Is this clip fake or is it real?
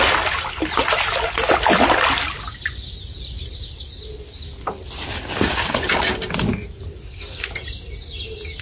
real